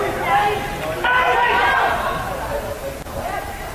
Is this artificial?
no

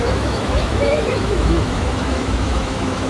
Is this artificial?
yes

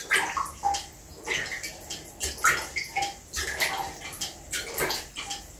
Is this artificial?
no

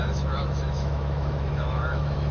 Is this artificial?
yes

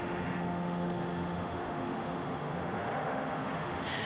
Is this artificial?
yes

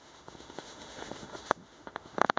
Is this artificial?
yes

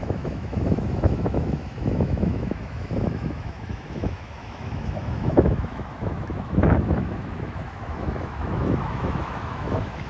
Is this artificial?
yes